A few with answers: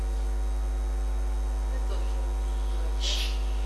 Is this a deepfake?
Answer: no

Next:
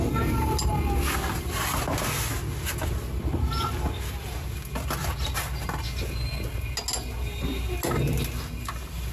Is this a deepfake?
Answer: no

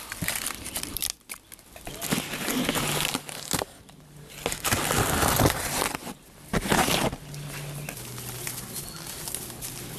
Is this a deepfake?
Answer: no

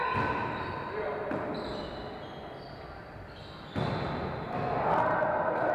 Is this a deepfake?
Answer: no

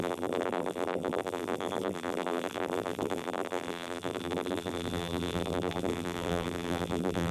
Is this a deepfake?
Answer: yes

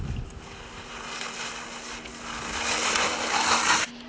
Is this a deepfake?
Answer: no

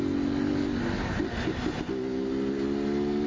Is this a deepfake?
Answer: no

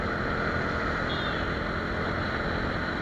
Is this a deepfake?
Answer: no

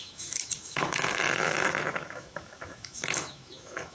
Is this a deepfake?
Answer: yes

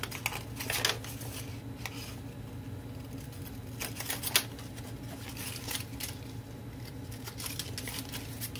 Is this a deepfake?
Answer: no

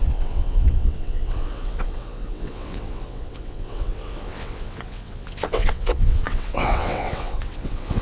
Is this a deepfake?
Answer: yes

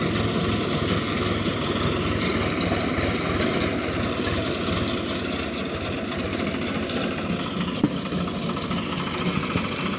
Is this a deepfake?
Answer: no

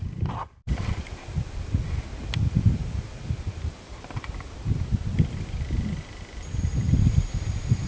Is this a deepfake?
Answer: no